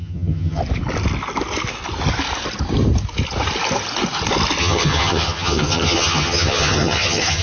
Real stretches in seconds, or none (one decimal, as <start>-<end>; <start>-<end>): 0.6-4.6